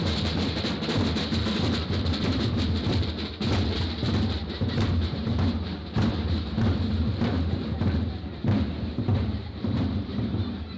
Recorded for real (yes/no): no